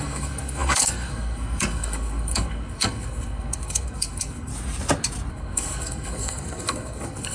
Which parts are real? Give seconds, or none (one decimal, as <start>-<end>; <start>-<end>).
4.5-5.3